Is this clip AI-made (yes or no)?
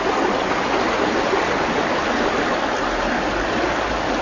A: no